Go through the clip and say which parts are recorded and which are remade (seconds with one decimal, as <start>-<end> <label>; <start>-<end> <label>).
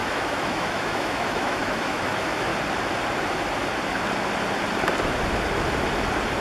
0.0-2.5 remade; 2.5-6.4 recorded